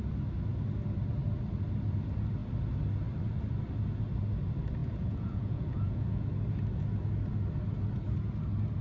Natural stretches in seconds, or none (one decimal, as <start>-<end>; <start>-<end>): 0.0-4.8; 6.3-8.8